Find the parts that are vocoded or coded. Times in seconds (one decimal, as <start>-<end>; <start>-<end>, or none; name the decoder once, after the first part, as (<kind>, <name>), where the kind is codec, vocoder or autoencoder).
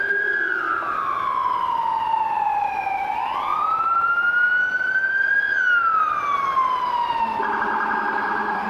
none